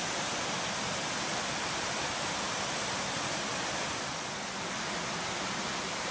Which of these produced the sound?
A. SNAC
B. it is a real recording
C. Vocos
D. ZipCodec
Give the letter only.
B